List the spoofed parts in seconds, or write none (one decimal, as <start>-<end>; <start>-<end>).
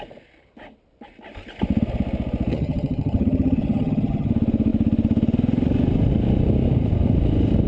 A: 2.5-4.3